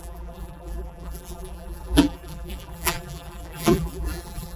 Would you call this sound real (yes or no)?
no